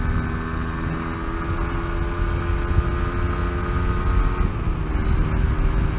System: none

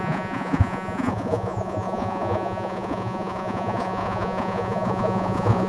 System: vocoder, Vocos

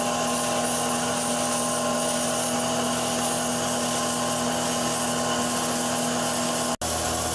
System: none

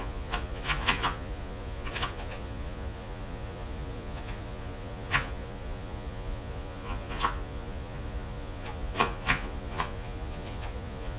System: vocoder, Vocos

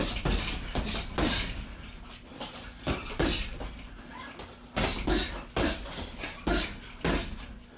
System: none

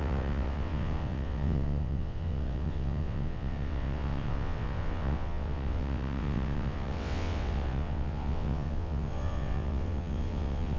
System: vocoder, WaveNeXt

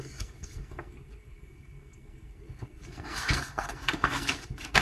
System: codec, SNAC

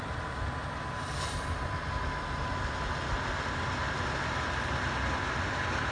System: none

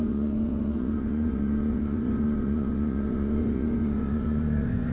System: vocoder, Vocos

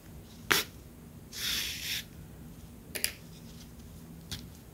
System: none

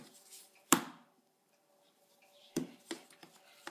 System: vocoder, BigVGAN v2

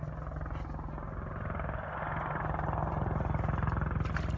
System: none